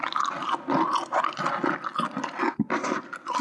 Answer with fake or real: real